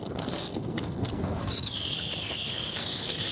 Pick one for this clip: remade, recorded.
remade